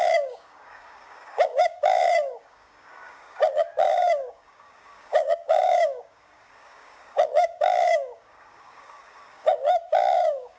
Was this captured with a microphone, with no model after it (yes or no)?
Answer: no